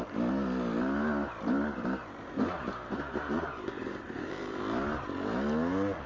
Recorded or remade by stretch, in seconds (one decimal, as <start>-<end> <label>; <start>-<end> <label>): 0.0-2.0 recorded; 2.0-4.6 remade; 4.6-6.1 recorded